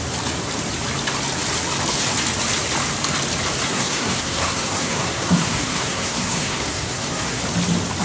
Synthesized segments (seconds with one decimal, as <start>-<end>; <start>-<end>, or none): 3.7-7.4